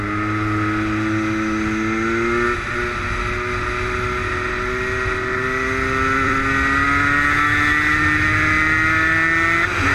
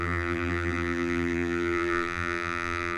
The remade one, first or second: second